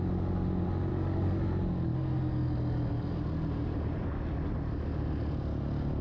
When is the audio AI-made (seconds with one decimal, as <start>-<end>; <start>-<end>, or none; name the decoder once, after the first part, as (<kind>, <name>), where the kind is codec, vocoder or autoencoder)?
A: 0.9-1.5 (codec, DAC)